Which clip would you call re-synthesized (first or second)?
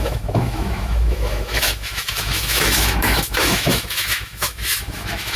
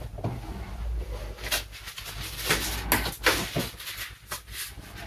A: first